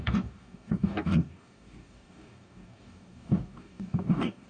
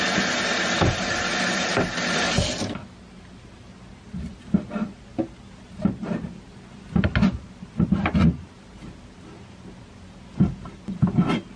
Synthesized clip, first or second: first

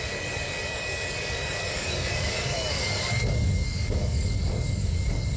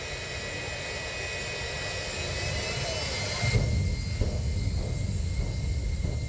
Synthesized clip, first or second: first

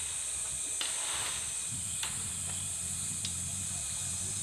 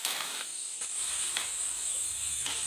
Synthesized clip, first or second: second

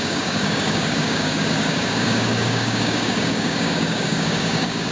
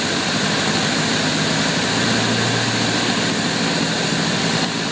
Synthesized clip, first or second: first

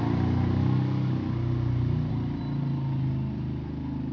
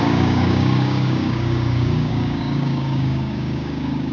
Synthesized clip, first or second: second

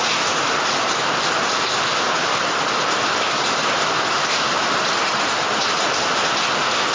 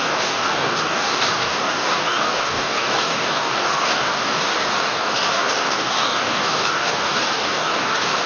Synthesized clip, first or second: second